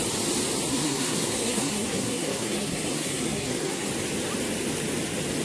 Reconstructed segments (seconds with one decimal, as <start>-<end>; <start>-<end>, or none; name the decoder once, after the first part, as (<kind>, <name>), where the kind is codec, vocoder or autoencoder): 0.7-3.9 (codec, SNAC)